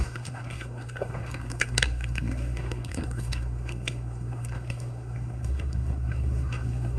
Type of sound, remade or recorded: remade